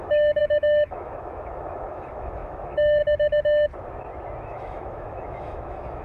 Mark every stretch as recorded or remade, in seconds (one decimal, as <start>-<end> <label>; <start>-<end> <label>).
0.0-3.0 remade; 3.0-4.4 recorded; 4.4-6.0 remade